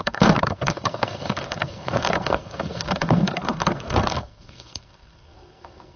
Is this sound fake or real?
fake